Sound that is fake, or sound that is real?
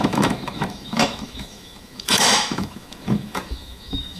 fake